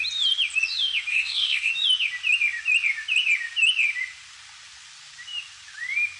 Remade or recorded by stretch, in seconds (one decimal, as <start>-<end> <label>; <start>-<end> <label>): 0.0-1.1 recorded; 1.1-1.7 remade; 1.7-6.2 recorded